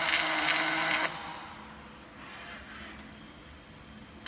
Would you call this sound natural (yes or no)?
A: yes